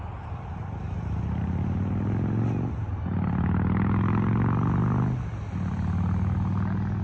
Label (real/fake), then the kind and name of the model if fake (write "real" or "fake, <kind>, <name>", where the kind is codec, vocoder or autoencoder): real